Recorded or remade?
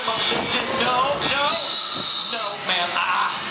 recorded